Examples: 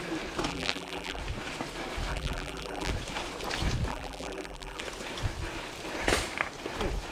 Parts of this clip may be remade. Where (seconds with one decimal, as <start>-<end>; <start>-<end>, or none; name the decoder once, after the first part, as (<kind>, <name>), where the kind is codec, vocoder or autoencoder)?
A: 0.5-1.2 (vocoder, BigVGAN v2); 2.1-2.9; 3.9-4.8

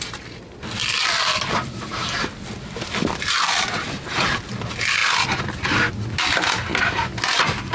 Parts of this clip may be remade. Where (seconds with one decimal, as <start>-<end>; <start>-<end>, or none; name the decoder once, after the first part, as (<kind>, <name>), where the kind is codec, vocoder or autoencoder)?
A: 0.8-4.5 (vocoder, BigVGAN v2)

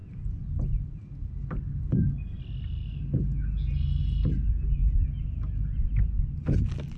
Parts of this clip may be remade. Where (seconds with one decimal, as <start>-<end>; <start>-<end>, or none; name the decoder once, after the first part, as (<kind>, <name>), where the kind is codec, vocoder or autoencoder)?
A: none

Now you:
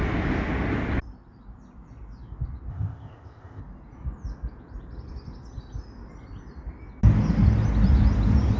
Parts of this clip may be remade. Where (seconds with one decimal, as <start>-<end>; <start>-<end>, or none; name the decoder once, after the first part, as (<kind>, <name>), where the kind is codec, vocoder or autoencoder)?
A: 2.7-3.6 (codec, ZipCodec)